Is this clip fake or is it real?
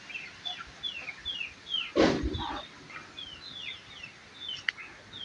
real